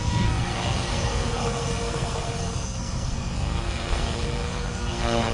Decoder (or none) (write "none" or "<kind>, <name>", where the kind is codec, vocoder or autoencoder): codec, SNAC